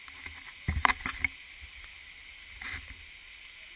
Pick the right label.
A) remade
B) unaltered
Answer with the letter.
B